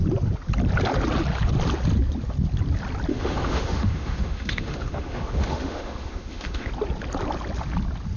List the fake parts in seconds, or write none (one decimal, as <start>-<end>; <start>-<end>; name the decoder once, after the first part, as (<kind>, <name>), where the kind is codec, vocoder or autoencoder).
3.1-6.7 (autoencoder, DAC-VAE)